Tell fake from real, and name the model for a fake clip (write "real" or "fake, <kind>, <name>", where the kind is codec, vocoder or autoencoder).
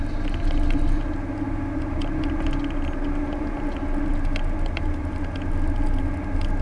real